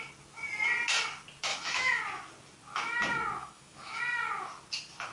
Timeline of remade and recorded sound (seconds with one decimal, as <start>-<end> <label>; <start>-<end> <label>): 0.0-1.5 recorded; 1.5-2.0 remade; 2.0-3.4 recorded; 3.4-4.0 remade; 4.0-5.1 recorded